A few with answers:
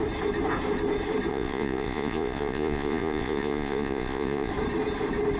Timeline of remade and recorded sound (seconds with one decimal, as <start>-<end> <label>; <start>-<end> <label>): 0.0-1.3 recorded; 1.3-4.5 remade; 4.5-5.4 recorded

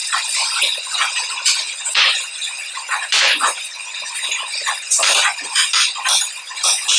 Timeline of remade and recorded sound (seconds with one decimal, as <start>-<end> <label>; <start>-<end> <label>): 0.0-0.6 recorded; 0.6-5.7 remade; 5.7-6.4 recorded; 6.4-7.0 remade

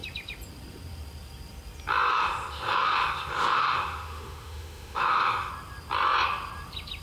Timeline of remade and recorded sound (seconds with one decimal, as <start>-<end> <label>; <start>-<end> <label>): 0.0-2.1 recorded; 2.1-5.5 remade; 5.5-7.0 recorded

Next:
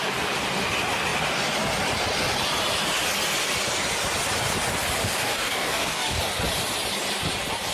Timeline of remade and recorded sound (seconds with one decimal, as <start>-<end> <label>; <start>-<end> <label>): 0.0-5.0 recorded; 5.0-6.2 remade; 6.2-7.7 recorded

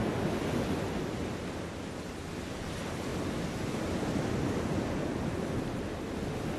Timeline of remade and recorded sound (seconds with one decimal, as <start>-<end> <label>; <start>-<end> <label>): 0.0-6.6 recorded

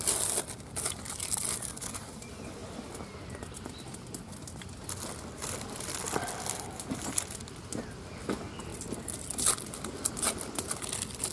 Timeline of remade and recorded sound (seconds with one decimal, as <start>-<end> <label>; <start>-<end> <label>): 0.0-11.3 recorded

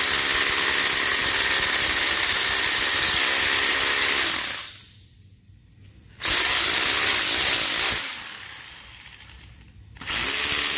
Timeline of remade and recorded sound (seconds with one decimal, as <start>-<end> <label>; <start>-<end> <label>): 0.0-10.8 recorded

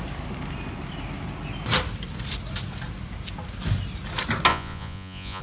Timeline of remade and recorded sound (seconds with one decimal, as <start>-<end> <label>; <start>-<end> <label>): 0.0-4.5 recorded; 4.5-5.4 remade